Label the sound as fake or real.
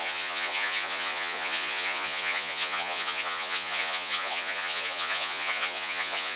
fake